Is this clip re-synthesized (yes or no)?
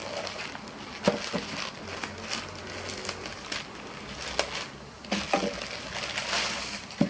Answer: no